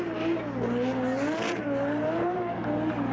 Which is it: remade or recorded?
recorded